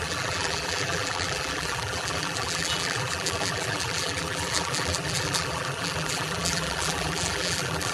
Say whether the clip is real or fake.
fake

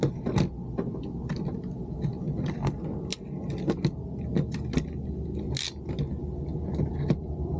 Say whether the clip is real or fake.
real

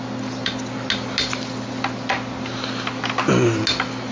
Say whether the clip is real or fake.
real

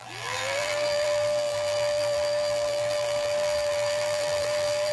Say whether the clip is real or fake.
fake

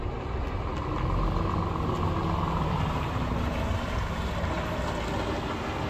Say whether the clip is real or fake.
real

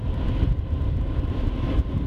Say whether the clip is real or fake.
fake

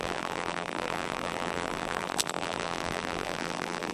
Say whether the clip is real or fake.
fake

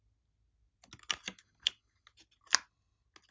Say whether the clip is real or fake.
real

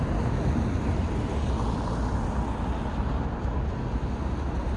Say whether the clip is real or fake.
real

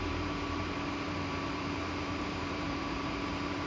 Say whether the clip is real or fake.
fake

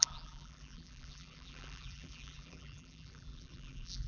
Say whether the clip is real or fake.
fake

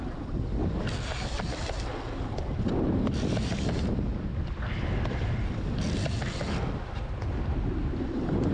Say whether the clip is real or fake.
real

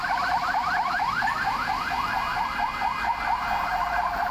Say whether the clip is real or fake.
fake